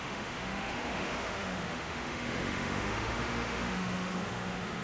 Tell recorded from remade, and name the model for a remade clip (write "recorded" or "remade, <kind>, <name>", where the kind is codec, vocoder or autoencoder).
remade, autoencoder, DAC-VAE